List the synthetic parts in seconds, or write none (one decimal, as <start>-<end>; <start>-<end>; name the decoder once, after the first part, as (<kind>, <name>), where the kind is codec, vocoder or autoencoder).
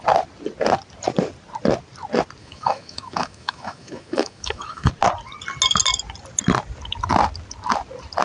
2.4-4.9 (autoencoder, DAC-VAE)